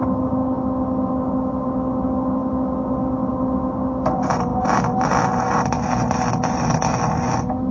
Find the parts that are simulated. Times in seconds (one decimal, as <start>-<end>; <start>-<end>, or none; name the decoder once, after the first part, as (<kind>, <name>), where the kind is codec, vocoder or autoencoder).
none